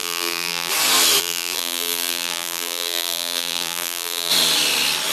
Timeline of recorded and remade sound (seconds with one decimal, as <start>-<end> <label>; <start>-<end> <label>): 0.0-0.7 remade; 0.7-1.2 recorded; 1.2-4.3 remade; 4.3-5.1 recorded